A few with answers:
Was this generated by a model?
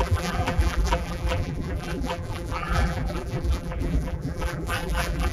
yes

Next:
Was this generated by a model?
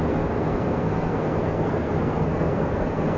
yes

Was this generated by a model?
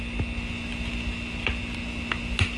no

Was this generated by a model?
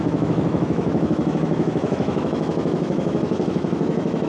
yes